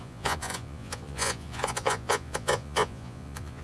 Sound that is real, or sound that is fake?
fake